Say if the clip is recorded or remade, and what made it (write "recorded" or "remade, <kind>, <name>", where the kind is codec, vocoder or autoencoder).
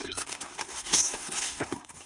remade, codec, SNAC